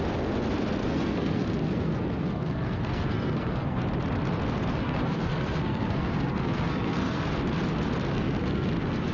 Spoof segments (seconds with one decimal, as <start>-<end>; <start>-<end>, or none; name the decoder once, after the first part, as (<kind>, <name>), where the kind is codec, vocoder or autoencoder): 0.8-3.8 (codec, SNAC); 4.8-7.3; 8.1-8.7